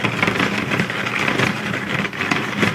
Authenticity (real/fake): real